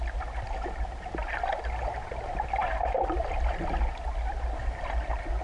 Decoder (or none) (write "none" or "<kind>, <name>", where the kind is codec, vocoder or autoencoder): none